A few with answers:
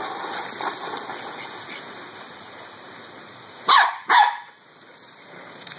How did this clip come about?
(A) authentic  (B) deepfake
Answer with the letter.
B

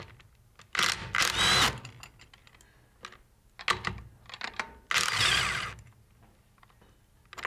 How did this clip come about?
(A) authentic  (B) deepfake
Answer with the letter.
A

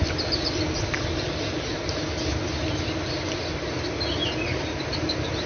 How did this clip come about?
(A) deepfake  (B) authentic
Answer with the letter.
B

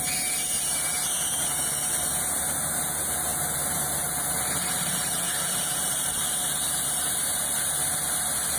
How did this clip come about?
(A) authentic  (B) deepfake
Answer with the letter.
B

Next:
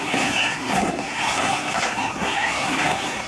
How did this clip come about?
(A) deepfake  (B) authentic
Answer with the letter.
A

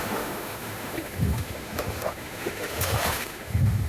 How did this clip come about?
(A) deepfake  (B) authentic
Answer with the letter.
A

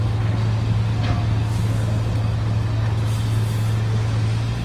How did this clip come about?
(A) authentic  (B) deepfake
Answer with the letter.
A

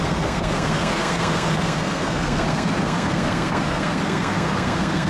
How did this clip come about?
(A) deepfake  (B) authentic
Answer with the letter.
A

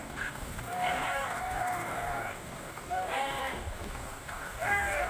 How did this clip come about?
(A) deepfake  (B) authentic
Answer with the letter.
A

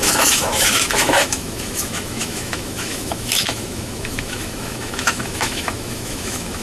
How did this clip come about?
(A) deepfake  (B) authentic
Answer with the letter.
A